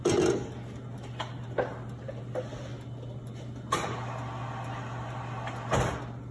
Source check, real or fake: real